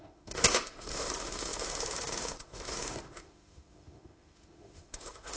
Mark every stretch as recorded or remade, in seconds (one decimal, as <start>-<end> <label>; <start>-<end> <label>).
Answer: 0.0-5.4 remade